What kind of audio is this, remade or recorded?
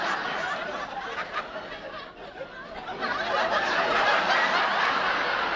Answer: recorded